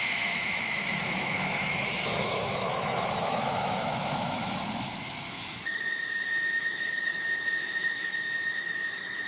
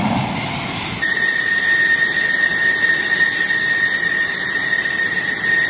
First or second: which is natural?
second